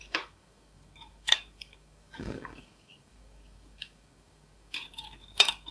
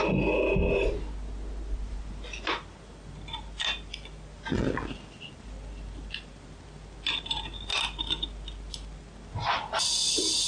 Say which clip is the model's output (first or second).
first